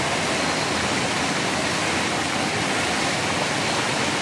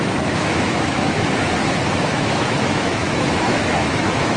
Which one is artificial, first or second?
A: second